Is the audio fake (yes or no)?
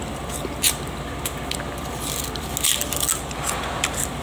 no